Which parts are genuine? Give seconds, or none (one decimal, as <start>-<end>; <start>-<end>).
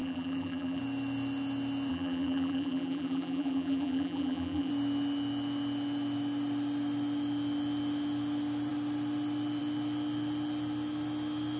0.8-1.9; 4.7-11.6